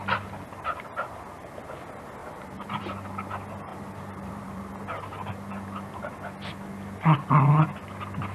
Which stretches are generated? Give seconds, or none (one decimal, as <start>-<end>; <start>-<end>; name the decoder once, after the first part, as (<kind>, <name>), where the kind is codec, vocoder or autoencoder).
2.2-2.8 (vocoder, BigVGAN v2); 3.7-4.7